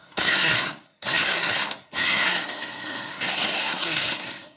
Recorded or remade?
remade